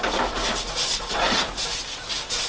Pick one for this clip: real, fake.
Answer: real